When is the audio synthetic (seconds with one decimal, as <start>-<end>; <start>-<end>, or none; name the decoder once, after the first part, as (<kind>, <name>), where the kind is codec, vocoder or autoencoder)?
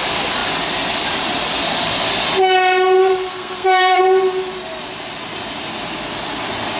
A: 3.0-4.0 (codec, SNAC)